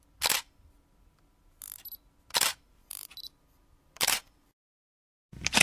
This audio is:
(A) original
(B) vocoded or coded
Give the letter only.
A